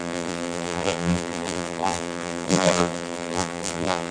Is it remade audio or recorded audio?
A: remade